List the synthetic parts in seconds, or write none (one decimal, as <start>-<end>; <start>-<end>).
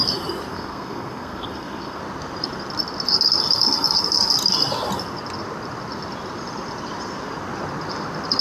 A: 0.5-2.0